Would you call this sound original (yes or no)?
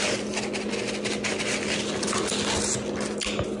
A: yes